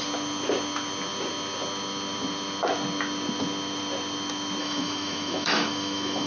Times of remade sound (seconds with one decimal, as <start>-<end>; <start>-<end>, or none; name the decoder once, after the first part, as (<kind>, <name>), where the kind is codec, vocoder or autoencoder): 4.6-6.3 (autoencoder, DAC-VAE)